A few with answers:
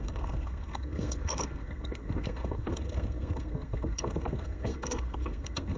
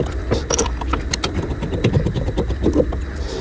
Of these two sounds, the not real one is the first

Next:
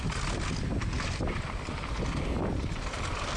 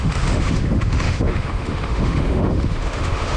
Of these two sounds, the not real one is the second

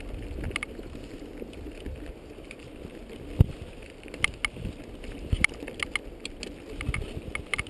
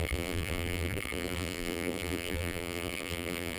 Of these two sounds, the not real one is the second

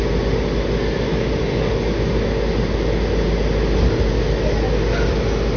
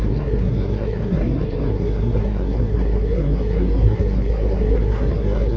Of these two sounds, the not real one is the second